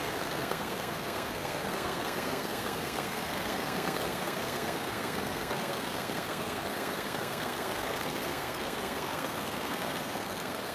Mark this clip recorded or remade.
remade